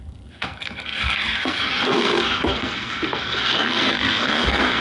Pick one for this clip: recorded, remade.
remade